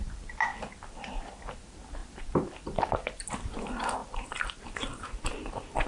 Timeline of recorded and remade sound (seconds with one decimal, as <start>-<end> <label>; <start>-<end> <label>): 0.0-0.5 recorded; 0.5-1.1 remade; 1.1-4.0 recorded; 4.0-5.2 remade; 5.2-5.9 recorded